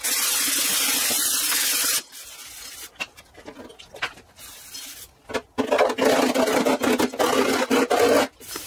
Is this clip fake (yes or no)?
no